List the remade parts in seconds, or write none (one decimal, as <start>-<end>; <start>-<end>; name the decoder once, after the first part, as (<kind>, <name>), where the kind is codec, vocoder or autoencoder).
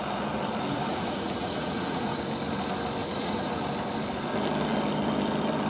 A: 0.9-2.2 (vocoder, Vocos); 3.0-3.6